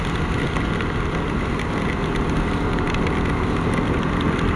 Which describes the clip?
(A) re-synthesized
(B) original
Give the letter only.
B